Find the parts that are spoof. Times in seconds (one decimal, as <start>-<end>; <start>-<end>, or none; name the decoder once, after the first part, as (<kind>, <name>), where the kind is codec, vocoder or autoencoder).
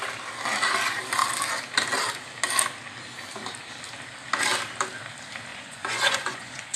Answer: 5.5-6.8 (vocoder, Vocos)